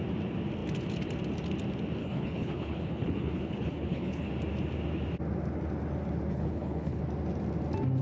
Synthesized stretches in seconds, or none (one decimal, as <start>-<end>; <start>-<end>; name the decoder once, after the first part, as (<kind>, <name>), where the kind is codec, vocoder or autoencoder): 2.0-4.3 (codec, HILCodec); 6.3-7.0